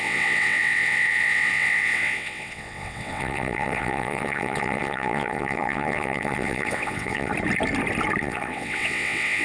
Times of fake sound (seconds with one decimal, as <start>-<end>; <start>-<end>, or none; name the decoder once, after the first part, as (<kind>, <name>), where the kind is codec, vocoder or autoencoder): 0.0-7.3 (vocoder, WaveNeXt); 8.2-9.4